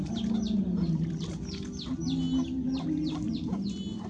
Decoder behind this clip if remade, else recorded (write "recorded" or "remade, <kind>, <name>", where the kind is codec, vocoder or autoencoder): recorded